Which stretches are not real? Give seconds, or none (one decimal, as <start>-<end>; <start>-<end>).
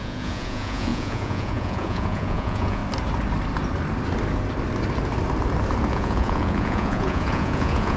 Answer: 0.0-2.8; 5.9-8.0